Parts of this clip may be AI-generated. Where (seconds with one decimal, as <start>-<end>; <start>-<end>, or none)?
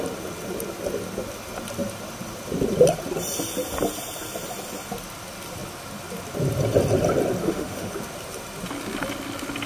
7.4-7.9